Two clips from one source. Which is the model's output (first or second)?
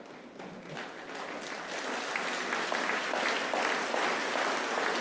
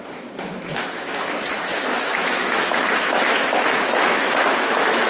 second